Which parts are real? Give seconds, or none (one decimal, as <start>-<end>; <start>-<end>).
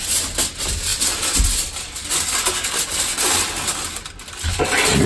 0.0-5.1